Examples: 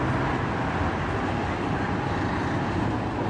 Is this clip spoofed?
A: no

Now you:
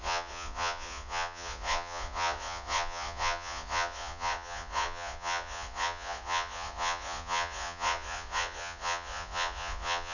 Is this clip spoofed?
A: yes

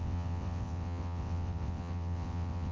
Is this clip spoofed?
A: yes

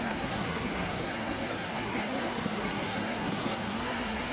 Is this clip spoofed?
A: yes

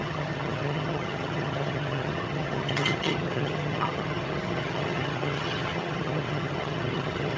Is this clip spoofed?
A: yes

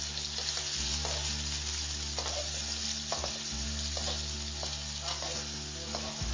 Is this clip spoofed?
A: no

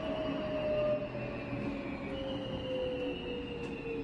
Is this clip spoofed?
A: no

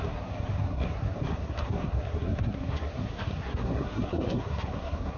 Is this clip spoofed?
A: yes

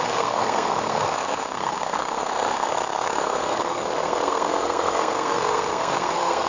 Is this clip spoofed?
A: yes